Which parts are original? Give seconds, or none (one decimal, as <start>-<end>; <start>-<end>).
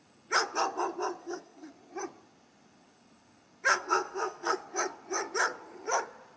0.0-1.2; 1.7-3.7; 4.5-6.4